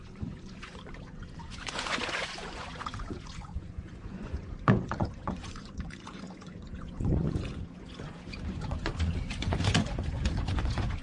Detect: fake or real fake